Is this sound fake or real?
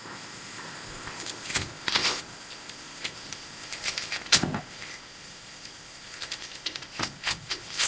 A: fake